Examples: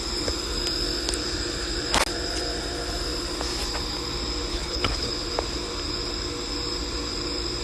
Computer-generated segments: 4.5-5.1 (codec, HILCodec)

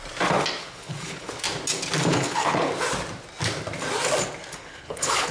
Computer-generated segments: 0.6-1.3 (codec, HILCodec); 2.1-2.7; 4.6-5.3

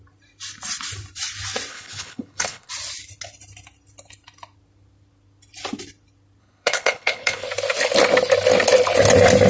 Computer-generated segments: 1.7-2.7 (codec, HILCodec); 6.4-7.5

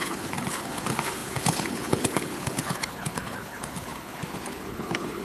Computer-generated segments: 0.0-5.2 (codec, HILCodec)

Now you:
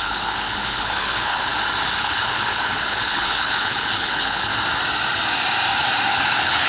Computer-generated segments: 0.0-1.5 (codec, HILCodec); 2.0-4.5; 6.1-6.7